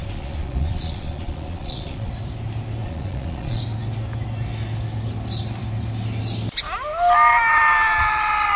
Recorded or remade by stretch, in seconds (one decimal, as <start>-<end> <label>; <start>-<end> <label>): 0.0-2.1 remade; 2.1-2.8 recorded; 2.8-3.6 remade; 3.6-8.6 recorded